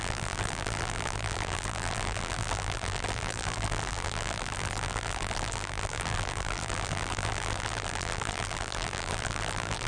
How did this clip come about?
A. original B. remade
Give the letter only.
B